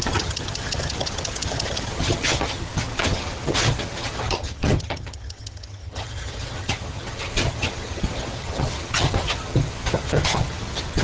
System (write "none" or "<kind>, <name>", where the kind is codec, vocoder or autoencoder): vocoder, HiFi-GAN